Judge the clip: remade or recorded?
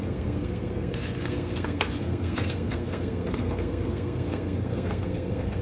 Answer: remade